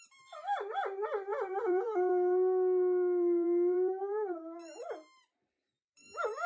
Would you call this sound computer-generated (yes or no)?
yes